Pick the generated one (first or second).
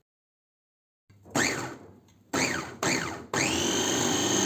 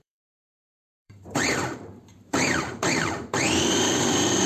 second